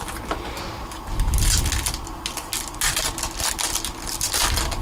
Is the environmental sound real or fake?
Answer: real